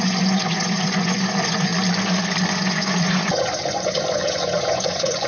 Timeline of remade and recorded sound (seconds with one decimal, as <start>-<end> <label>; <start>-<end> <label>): 0.0-1.7 remade; 1.7-2.5 recorded; 2.5-5.3 remade

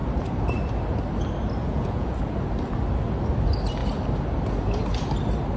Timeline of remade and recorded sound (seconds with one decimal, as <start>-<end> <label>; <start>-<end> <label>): 0.0-1.6 recorded; 1.6-2.3 remade; 2.3-5.6 recorded

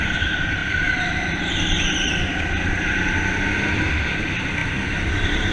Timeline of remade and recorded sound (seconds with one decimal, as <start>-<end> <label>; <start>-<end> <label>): 0.0-5.5 recorded